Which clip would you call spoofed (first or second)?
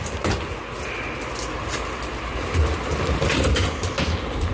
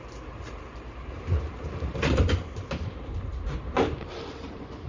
second